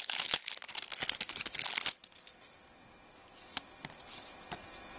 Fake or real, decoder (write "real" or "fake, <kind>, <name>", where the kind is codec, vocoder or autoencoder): real